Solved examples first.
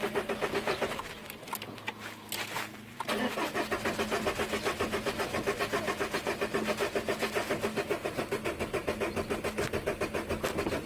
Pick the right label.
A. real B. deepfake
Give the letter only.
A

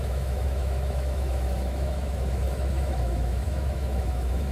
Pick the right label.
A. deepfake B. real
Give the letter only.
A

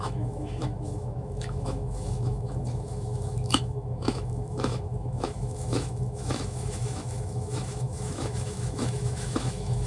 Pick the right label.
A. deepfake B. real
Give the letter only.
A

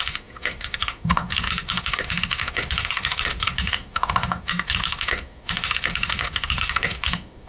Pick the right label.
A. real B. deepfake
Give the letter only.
B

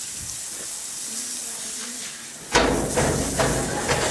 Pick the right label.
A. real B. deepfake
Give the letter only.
A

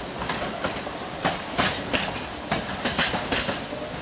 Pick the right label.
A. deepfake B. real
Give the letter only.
B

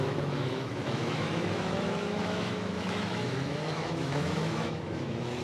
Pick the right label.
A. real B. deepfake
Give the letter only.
B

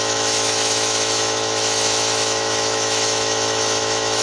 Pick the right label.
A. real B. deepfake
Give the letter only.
B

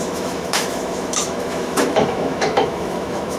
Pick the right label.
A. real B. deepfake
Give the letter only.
B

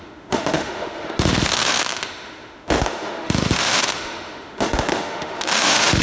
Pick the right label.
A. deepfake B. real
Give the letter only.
A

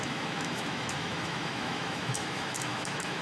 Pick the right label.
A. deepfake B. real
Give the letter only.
A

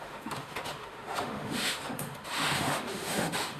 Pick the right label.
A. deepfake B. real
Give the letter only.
A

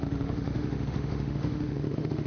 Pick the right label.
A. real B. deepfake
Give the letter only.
B